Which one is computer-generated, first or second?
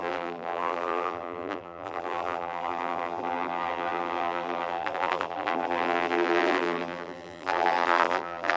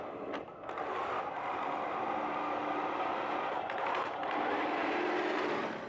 first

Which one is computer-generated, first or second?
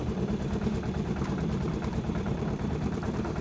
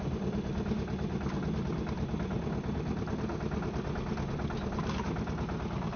first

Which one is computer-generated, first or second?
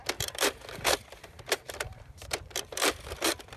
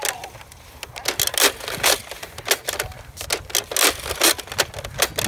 first